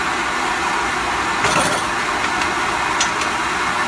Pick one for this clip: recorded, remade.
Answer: recorded